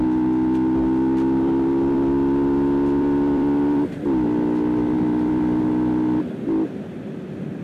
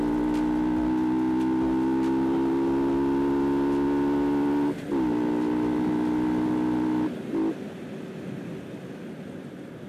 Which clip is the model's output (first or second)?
first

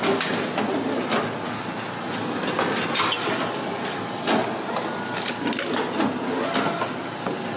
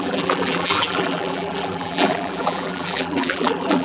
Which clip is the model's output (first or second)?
second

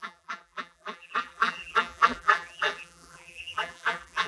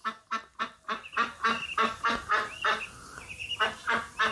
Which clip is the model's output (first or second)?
first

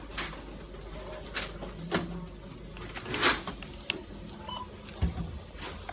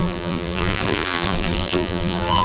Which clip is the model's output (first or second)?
second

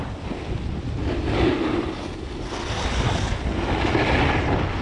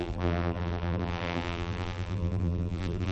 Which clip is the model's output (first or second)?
second